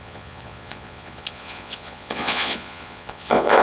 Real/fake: fake